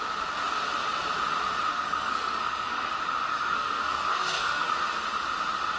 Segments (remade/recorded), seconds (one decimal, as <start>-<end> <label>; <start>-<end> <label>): 0.0-1.7 recorded; 1.7-2.9 remade; 2.9-3.3 recorded; 3.3-4.7 remade; 4.7-5.8 recorded

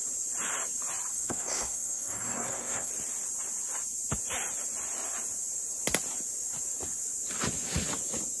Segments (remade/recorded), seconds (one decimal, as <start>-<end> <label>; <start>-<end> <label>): 0.0-1.1 recorded; 1.1-2.9 remade; 2.9-8.4 recorded

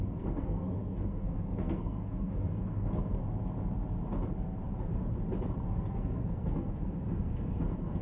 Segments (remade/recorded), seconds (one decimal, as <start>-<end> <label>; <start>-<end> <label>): 0.0-3.2 remade; 3.2-5.7 recorded; 5.7-8.0 remade

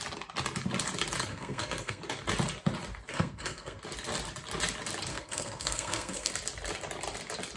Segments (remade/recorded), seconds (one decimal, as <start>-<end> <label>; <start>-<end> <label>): 0.0-1.3 recorded; 1.3-2.0 remade; 2.0-3.1 recorded; 3.1-3.8 remade; 3.8-5.1 recorded; 5.1-6.3 remade; 6.3-7.6 recorded

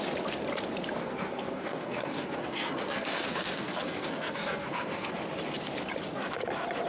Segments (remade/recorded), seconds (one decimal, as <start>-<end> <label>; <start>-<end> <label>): 0.0-1.0 recorded; 1.0-5.1 remade; 5.1-6.9 recorded

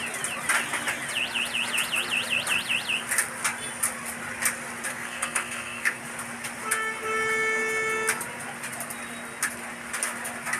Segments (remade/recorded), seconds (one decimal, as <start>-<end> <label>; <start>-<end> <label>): 0.0-4.9 recorded; 4.9-6.0 remade; 6.0-10.6 recorded

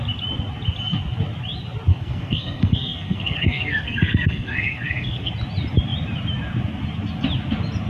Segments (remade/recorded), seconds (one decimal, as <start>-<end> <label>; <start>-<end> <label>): 0.0-1.9 recorded; 1.9-5.3 remade; 5.3-7.9 recorded

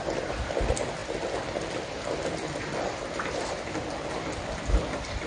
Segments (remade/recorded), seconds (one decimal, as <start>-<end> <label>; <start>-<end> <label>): 0.0-5.3 recorded